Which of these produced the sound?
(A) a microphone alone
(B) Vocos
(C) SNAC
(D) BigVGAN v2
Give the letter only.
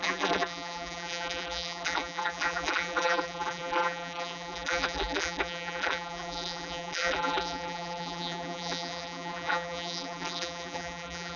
D